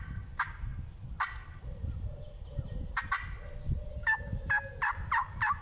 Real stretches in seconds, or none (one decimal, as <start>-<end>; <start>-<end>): 0.0-3.9; 4.5-5.6